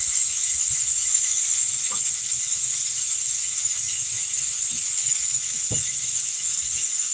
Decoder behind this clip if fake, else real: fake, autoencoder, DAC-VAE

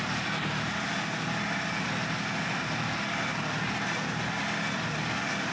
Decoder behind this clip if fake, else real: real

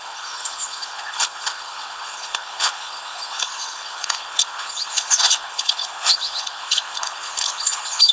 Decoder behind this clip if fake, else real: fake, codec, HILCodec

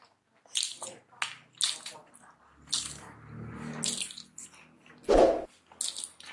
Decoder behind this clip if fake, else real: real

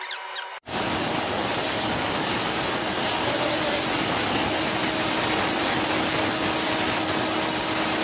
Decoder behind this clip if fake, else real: real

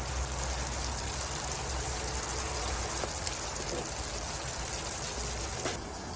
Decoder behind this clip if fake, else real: real